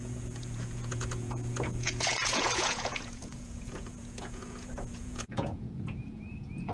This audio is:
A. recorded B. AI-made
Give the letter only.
B